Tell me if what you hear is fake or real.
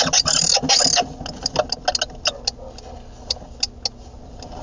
real